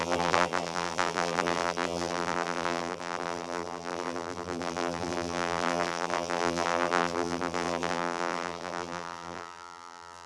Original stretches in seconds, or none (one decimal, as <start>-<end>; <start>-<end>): none

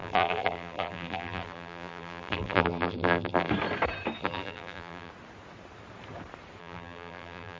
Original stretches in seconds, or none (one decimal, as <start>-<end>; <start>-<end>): 3.5-4.2; 5.1-6.6

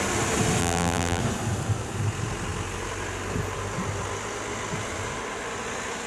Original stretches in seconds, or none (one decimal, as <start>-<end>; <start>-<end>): 0.0-0.6; 1.2-6.1

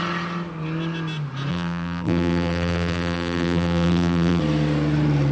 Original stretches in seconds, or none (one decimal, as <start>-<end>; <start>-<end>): 0.0-1.5; 4.4-5.3

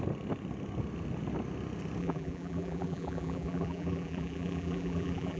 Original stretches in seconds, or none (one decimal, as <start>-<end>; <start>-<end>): 0.0-2.0

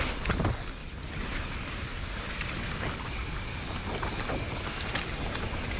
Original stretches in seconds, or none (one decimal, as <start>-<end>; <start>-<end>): 0.0-0.8; 1.3-1.9; 2.8-3.2; 3.9-5.8

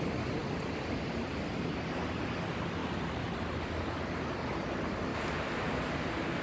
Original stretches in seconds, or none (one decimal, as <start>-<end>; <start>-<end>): 0.0-0.4; 1.5-2.8; 4.0-5.1

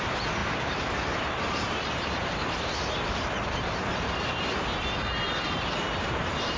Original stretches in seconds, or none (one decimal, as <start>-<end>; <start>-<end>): none